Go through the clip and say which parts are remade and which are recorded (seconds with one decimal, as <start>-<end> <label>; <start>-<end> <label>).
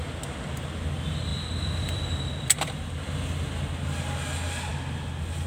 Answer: 0.0-1.3 recorded; 1.3-2.3 remade; 2.3-5.5 recorded